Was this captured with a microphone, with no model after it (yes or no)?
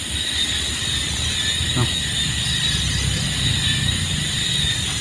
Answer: yes